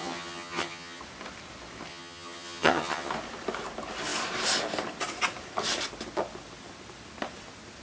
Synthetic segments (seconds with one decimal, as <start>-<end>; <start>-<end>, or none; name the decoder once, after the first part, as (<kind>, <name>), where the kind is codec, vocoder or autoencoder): 0.0-1.0 (vocoder, HiFi-GAN); 1.9-3.1